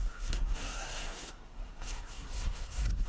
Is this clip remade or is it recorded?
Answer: remade